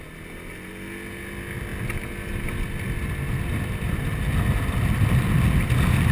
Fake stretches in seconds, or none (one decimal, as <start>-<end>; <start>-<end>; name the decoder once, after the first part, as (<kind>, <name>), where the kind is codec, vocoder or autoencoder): none